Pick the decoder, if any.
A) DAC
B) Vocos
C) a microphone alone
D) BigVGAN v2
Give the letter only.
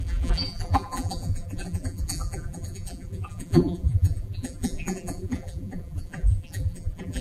D